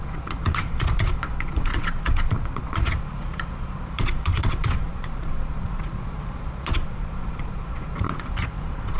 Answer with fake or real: fake